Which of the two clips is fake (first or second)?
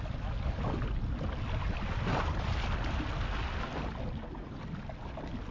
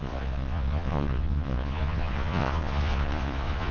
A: second